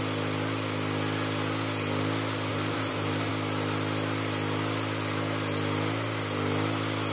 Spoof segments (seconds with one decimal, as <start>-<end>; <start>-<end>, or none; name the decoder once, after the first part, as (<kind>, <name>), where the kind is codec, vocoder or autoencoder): 2.5-3.3 (vocoder, BigVGAN v2)